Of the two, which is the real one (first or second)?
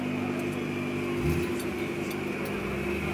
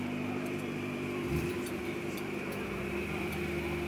first